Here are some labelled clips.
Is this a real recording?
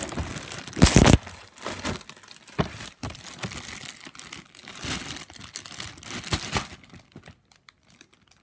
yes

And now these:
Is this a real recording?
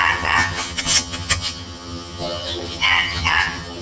no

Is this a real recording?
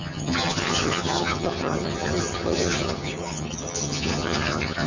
no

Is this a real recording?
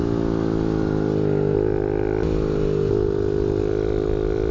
yes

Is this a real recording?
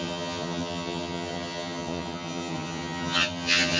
no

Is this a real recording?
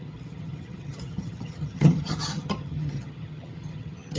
no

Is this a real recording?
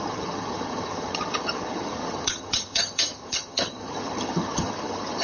no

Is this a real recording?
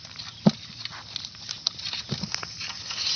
yes